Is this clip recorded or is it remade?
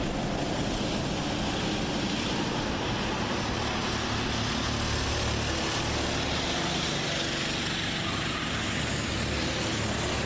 recorded